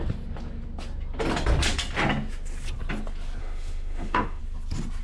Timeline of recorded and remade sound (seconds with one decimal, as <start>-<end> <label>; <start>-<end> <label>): 0.0-3.4 recorded; 3.4-4.4 remade; 4.4-5.0 recorded